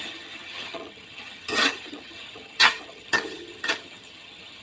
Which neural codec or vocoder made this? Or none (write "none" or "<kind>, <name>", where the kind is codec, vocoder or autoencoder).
vocoder, HiFi-GAN